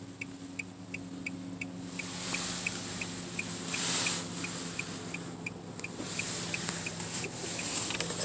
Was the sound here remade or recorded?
recorded